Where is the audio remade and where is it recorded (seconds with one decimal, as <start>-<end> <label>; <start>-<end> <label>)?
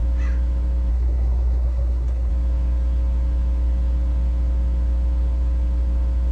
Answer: 0.0-0.9 recorded; 0.9-2.3 remade; 2.3-6.3 recorded